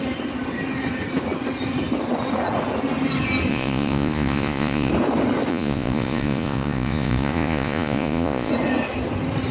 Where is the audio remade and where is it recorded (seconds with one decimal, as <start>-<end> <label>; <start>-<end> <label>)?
0.0-3.5 recorded; 3.5-4.9 remade; 4.9-5.5 recorded; 5.5-8.5 remade; 8.5-9.5 recorded